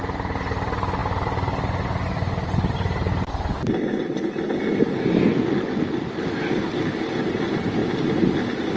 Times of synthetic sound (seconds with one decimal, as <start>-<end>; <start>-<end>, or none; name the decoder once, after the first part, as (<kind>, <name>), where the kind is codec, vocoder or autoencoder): none